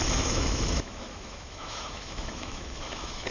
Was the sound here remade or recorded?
remade